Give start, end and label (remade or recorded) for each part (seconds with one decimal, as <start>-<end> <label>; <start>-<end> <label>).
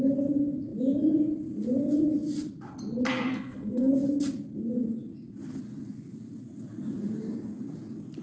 0.0-3.3 recorded; 3.3-3.9 remade; 3.9-8.2 recorded